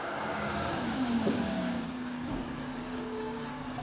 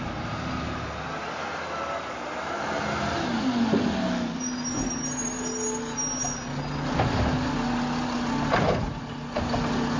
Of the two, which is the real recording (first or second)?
second